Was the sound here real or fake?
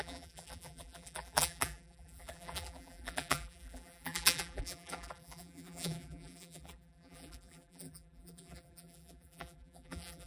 fake